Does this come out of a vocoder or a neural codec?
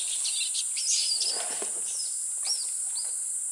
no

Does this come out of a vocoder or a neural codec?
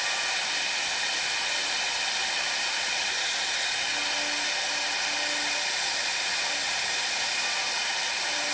no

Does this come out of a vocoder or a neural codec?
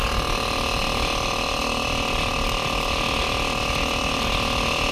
no